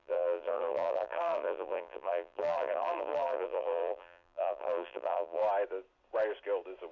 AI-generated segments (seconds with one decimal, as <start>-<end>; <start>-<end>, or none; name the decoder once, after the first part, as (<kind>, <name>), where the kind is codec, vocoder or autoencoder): 0.0-5.4 (vocoder, BigVGAN v2)